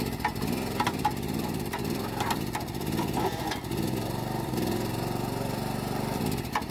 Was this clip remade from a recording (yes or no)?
yes